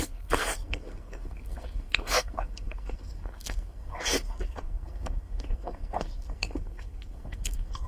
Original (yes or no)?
no